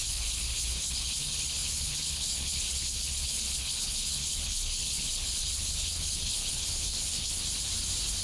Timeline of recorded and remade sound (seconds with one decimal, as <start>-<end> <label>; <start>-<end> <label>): 0.0-7.4 remade; 7.4-8.2 recorded